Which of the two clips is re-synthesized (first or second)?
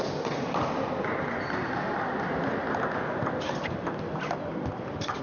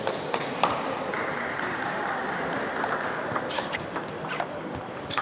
second